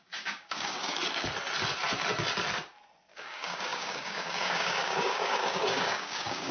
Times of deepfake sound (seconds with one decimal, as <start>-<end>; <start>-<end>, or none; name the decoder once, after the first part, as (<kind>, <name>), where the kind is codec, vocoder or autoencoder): 0.0-1.0 (codec, DAC); 3.1-6.5

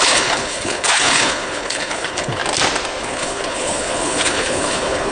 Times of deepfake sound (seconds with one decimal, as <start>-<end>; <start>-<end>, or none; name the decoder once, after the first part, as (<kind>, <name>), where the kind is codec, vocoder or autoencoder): 0.0-2.4 (codec, HILCodec); 3.0-5.1